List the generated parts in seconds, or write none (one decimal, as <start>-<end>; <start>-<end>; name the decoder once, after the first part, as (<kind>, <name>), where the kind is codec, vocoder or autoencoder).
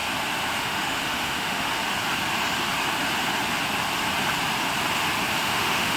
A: 0.6-1.8 (autoencoder, DAC-VAE); 5.4-6.0